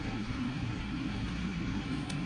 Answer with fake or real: fake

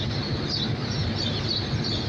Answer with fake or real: real